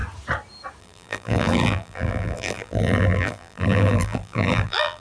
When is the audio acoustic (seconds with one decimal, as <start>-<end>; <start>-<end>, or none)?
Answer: 0.0-0.8